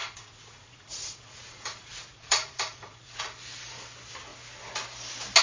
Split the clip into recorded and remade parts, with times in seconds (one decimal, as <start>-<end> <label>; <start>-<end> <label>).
0.0-3.2 remade; 3.2-5.4 recorded